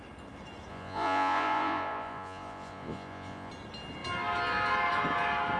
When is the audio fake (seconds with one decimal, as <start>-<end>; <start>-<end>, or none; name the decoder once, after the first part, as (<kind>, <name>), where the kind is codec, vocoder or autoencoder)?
0.7-3.5 (vocoder, Vocos)